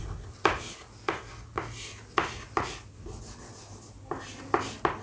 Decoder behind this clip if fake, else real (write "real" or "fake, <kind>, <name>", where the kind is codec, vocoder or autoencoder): real